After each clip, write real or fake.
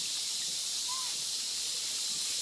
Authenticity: real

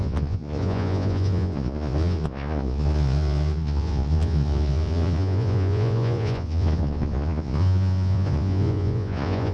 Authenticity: fake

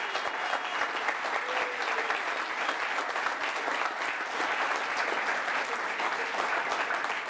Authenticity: real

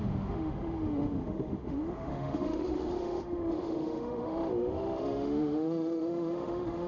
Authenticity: fake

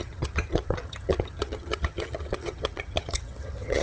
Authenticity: fake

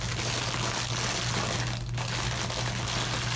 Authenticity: real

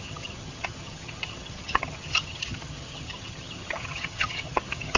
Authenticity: fake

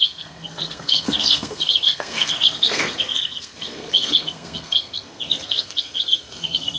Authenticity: fake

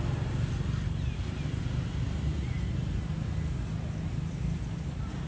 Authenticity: real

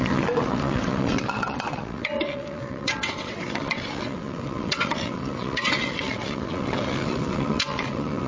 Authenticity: fake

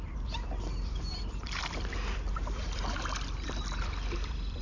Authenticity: fake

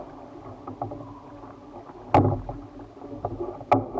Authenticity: real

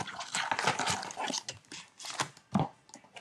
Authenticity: real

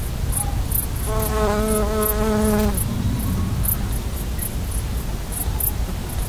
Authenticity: real